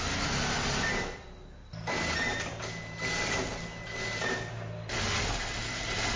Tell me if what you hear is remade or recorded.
recorded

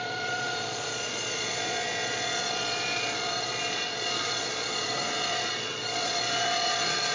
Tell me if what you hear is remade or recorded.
remade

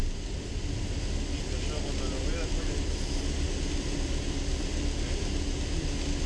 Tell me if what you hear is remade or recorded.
recorded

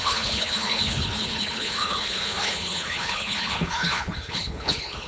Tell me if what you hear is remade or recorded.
remade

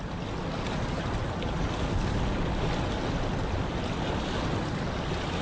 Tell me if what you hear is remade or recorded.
recorded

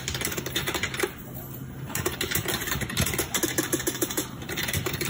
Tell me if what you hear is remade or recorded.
remade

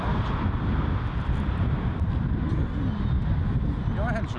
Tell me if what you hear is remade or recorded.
recorded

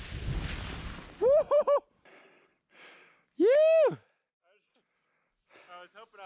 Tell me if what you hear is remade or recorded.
recorded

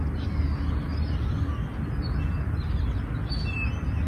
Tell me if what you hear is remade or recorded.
recorded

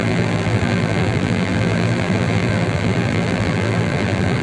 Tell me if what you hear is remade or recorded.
remade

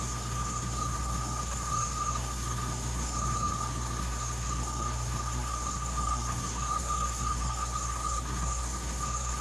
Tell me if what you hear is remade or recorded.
remade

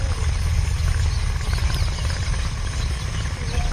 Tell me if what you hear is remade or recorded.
recorded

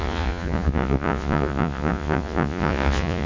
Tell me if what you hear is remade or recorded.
remade